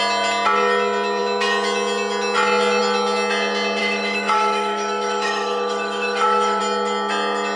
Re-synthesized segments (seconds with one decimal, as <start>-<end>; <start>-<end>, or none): 3.8-6.6